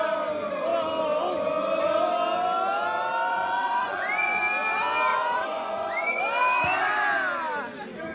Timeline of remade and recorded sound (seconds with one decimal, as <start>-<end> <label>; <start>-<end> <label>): 0.0-3.3 recorded; 3.3-4.4 remade; 4.4-5.1 recorded; 5.1-6.2 remade; 6.2-8.1 recorded